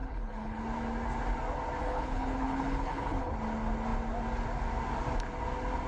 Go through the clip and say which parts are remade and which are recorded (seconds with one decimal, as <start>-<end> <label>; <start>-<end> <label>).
0.0-0.6 remade; 0.6-1.8 recorded; 1.8-3.3 remade; 3.3-5.9 recorded

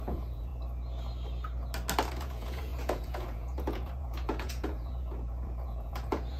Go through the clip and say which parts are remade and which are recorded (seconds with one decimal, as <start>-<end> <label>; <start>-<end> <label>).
0.0-0.5 remade; 0.5-2.1 recorded; 2.1-6.4 remade